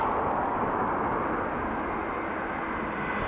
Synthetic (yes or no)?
no